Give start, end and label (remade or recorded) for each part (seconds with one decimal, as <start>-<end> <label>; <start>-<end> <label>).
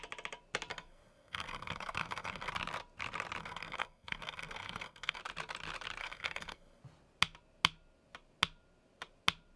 0.0-0.7 recorded; 0.7-2.5 remade; 2.5-3.4 recorded; 3.4-5.2 remade; 5.2-6.0 recorded; 6.0-6.8 remade; 6.8-9.6 recorded